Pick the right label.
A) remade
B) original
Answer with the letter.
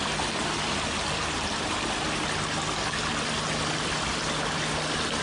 B